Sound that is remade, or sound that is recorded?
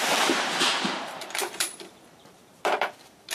remade